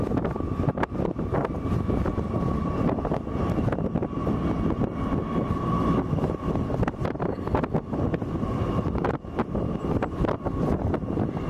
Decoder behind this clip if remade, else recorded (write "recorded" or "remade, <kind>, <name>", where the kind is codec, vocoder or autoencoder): recorded